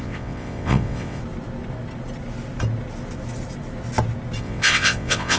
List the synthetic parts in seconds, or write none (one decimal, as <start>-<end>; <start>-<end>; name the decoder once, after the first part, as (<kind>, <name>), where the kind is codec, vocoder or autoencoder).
0.0-1.2 (vocoder, WaveNeXt); 4.4-5.4